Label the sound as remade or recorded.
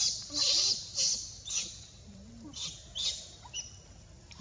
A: recorded